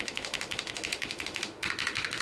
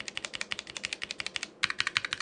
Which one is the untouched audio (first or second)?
second